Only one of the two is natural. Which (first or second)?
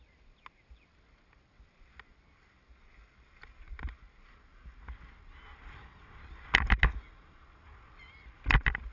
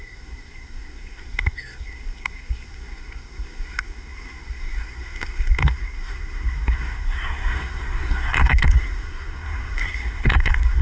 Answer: first